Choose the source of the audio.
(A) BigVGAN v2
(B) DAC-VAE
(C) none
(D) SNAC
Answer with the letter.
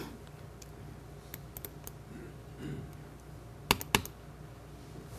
C